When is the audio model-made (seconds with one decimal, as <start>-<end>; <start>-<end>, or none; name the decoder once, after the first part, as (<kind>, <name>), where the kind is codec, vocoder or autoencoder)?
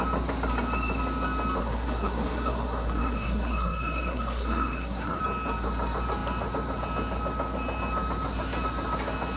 1.6-5.2 (codec, SNAC)